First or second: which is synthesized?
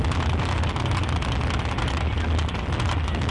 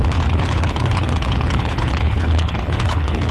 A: second